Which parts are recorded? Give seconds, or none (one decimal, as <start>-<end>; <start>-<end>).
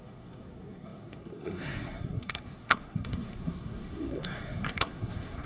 none